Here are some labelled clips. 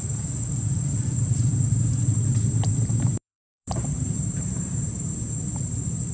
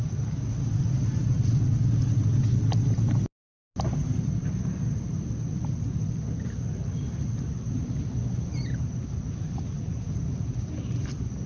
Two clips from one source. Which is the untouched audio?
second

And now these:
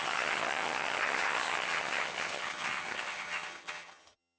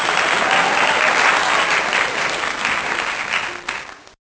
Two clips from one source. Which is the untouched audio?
second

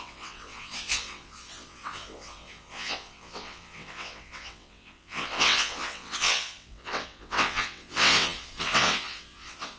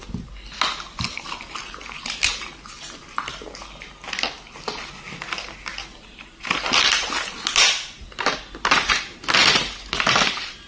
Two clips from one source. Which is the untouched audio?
second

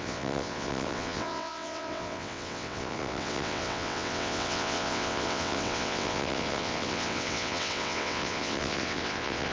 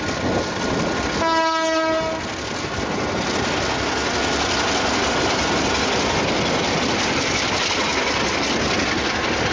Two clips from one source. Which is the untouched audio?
second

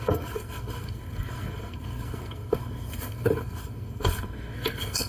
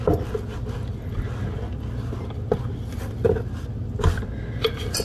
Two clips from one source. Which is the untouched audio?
second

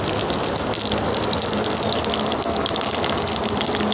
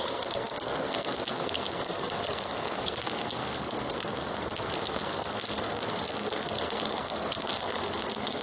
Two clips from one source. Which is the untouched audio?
first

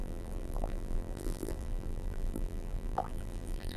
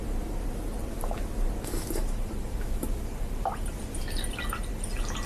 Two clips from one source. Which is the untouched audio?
second